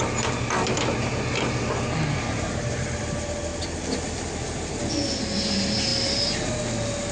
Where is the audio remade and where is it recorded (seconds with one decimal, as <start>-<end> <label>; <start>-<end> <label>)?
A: 0.0-7.1 recorded